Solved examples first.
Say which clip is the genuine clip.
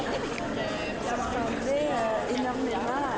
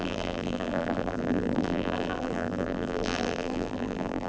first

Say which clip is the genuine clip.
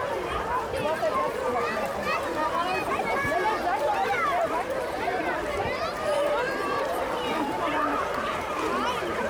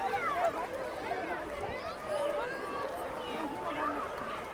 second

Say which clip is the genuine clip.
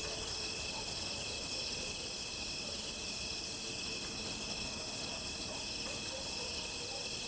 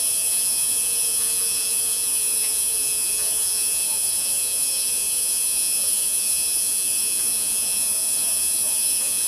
first